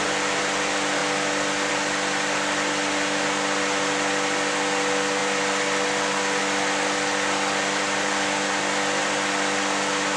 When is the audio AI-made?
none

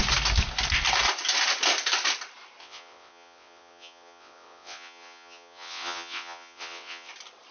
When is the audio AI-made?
2.6-7.1 (vocoder, WaveNeXt)

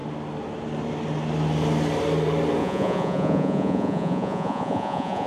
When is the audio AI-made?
2.6-5.3 (vocoder, Vocos)

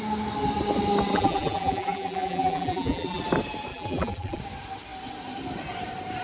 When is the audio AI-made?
1.1-3.2 (vocoder, BigVGAN v2); 3.7-4.4